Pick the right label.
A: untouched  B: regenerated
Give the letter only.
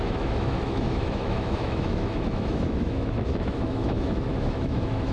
B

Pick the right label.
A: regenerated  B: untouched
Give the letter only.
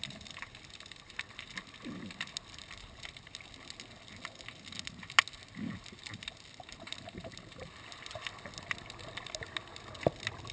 B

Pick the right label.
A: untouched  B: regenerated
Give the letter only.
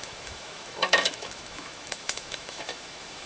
B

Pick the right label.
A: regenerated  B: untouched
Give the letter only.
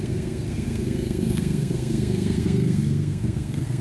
A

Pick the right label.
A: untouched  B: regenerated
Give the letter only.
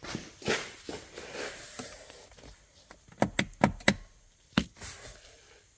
A